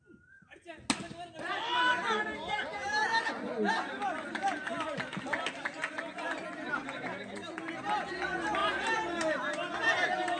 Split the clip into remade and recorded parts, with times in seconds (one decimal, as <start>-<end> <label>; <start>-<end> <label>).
0.0-10.4 recorded